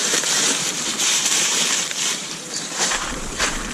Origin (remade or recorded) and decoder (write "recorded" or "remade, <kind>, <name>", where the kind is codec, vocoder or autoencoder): remade, vocoder, BigVGAN v2